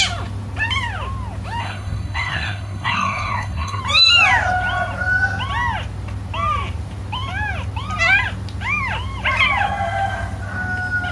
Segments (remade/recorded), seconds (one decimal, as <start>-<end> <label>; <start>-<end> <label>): 0.0-1.6 recorded; 1.6-3.8 remade; 3.8-11.1 recorded